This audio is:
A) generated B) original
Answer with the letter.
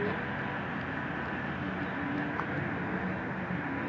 B